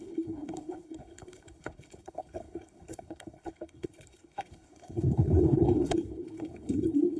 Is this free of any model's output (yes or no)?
no